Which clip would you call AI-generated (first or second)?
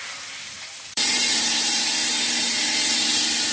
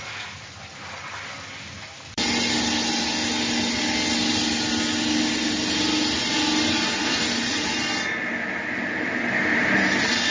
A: first